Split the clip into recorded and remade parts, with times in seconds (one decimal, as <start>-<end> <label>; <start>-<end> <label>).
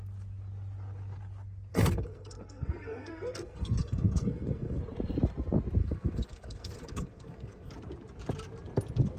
0.0-1.7 recorded; 1.7-4.8 remade; 4.8-5.8 recorded; 5.8-7.7 remade; 7.7-9.2 recorded